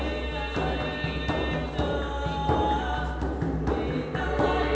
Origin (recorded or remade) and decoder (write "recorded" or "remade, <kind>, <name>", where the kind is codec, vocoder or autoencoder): recorded